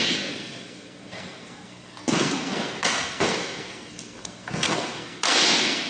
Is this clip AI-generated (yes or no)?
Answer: yes